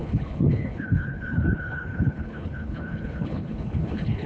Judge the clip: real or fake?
fake